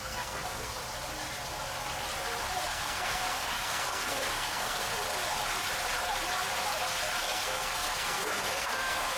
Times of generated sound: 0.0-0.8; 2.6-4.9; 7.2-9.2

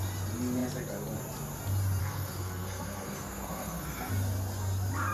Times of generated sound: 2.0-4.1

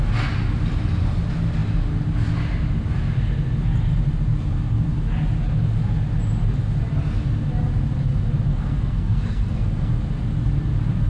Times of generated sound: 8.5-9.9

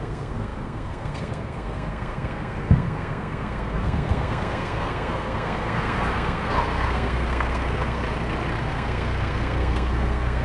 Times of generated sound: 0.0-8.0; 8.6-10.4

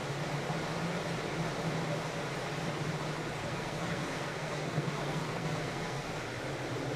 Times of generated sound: 3.4-6.2